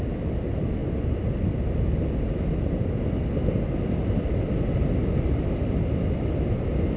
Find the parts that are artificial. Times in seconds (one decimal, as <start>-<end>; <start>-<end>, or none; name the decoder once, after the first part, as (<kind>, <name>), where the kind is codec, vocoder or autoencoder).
none